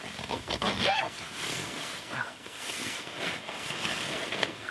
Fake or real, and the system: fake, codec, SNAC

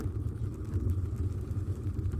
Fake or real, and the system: real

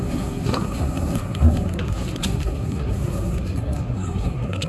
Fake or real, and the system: fake, codec, SNAC